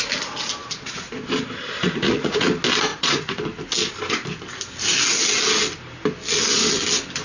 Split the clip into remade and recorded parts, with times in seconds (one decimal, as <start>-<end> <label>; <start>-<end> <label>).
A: 0.0-1.8 recorded; 1.8-2.5 remade; 2.5-2.9 recorded; 2.9-3.4 remade; 3.4-7.2 recorded